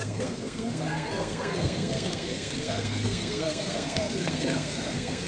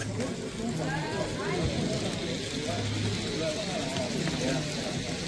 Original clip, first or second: second